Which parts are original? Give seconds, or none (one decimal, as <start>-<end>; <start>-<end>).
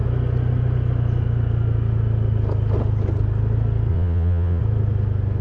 0.0-3.9; 4.6-5.4